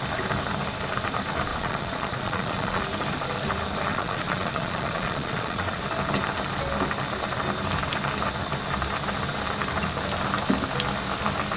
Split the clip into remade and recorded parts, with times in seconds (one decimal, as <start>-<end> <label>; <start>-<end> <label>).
0.0-1.5 recorded; 1.5-2.8 remade; 2.8-3.9 recorded; 3.9-5.8 remade; 5.8-11.6 recorded